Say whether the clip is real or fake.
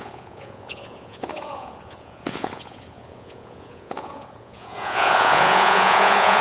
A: fake